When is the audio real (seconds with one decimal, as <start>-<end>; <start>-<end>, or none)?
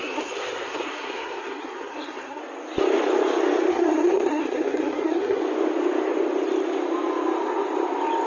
2.4-3.7; 5.4-8.3